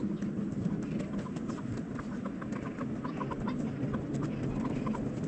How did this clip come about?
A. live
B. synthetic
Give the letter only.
A